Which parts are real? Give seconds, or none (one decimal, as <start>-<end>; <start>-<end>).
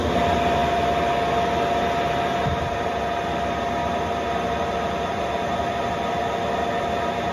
0.0-7.3